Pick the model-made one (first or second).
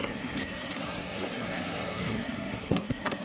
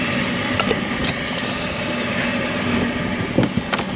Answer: first